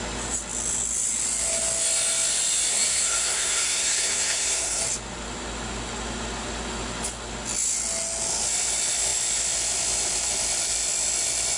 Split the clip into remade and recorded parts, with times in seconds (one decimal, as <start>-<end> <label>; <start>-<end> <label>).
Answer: 0.0-2.7 recorded; 2.7-4.8 remade; 4.8-11.6 recorded